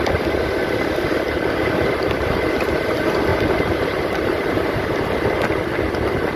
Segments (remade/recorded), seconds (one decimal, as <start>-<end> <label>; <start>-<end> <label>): 0.0-3.3 recorded; 3.3-5.2 remade; 5.2-6.4 recorded